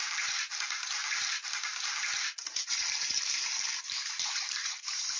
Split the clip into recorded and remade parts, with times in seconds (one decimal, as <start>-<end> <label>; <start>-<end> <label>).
0.0-5.2 remade